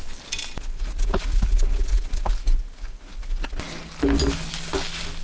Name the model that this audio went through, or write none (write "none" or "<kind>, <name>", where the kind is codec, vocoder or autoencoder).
none